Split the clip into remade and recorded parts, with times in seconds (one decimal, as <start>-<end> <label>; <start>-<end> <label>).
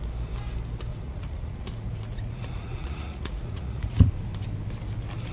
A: 0.0-0.9 recorded; 0.9-4.1 remade; 4.1-5.3 recorded